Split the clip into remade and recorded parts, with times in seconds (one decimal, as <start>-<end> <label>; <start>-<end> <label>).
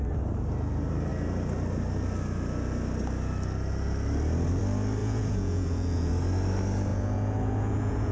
0.0-5.0 recorded; 5.0-6.1 remade; 6.1-6.9 recorded; 6.9-8.1 remade